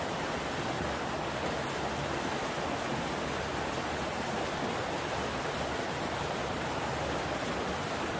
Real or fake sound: real